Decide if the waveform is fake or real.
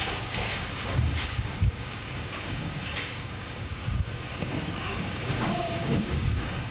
fake